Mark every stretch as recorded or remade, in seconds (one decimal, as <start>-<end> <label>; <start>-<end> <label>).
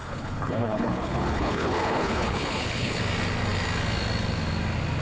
0.0-3.0 remade; 3.0-5.0 recorded